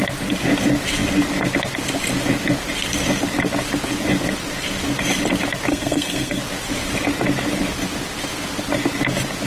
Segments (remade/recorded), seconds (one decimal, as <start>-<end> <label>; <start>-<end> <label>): 0.0-5.7 recorded; 5.7-6.4 remade; 6.4-9.5 recorded